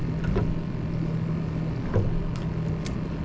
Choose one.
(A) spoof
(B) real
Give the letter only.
B